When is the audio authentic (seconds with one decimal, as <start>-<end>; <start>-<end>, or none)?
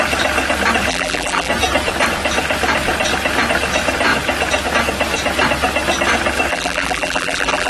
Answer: 0.0-0.9; 1.5-6.5